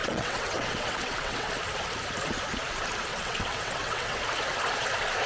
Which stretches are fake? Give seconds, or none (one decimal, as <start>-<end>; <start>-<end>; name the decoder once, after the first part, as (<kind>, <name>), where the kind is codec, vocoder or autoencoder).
0.0-1.5 (vocoder, WaveNeXt); 3.1-4.2